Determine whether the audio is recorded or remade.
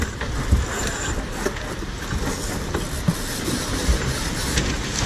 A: recorded